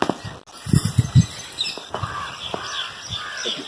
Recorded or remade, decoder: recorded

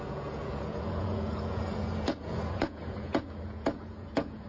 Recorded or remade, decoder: remade, vocoder, Vocos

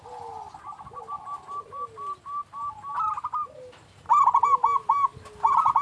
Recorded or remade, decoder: recorded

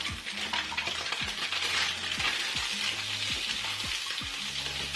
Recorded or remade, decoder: recorded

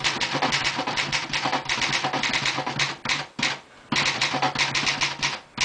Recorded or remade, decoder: recorded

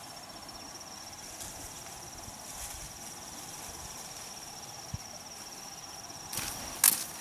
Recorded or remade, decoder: recorded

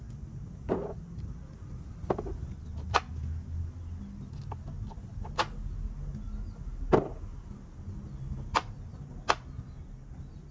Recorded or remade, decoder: recorded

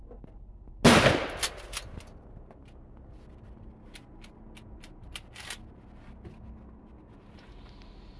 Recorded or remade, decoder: recorded